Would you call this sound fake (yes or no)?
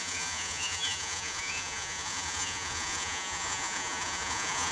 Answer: yes